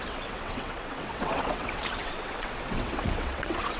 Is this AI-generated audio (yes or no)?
yes